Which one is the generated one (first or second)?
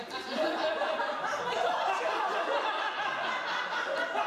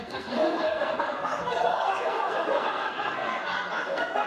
second